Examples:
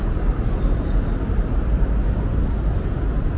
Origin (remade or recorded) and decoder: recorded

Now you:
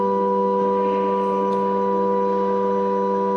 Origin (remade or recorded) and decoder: recorded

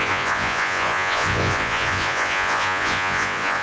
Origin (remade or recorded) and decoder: remade, vocoder, Vocos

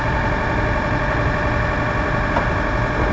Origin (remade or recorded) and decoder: recorded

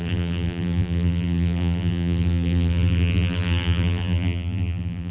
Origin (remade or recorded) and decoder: remade, vocoder, BigVGAN v2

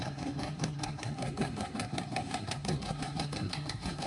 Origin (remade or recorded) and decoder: remade, codec, SNAC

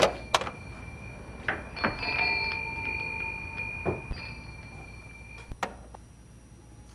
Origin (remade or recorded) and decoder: recorded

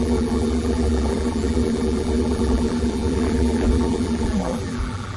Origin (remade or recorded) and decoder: remade, vocoder, BigVGAN v2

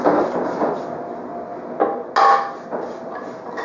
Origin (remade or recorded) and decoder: recorded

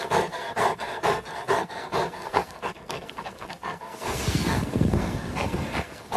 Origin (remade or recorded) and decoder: remade, codec, SNAC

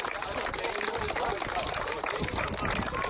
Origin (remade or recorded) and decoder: recorded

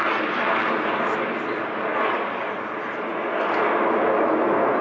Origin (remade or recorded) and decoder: recorded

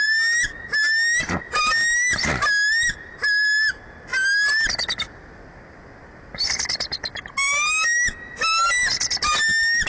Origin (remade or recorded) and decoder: recorded